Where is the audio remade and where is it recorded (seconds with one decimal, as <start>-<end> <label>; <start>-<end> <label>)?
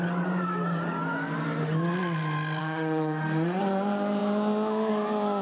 0.0-2.6 recorded; 2.6-3.6 remade; 3.6-5.4 recorded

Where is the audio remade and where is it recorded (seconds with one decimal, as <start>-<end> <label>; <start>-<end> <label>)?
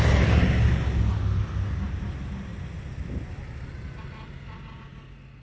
0.0-5.4 recorded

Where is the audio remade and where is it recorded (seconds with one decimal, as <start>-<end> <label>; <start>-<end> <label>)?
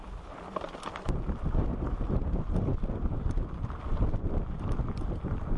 0.0-2.7 recorded; 2.7-5.6 remade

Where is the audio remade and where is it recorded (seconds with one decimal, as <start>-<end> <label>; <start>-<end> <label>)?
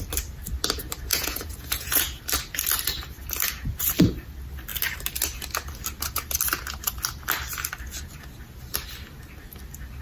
0.0-1.1 recorded; 1.1-2.2 remade; 2.2-10.0 recorded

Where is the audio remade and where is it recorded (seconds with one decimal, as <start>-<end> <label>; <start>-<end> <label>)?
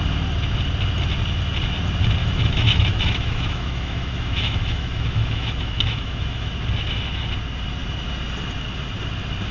0.0-2.2 recorded; 2.2-6.5 remade; 6.5-9.5 recorded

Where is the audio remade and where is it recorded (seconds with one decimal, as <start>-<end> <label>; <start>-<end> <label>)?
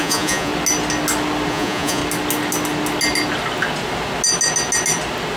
0.0-0.5 remade; 0.5-1.5 recorded; 1.5-2.0 remade; 2.0-5.4 recorded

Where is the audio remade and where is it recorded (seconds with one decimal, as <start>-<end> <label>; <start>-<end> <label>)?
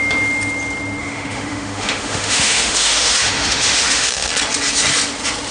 0.0-1.0 recorded; 1.0-4.3 remade; 4.3-5.5 recorded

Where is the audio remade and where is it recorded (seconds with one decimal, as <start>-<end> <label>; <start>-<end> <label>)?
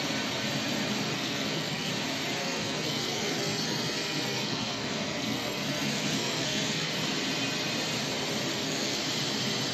0.0-1.1 recorded; 1.1-1.9 remade; 1.9-2.4 recorded; 2.4-6.9 remade; 6.9-8.5 recorded; 8.5-9.0 remade; 9.0-9.7 recorded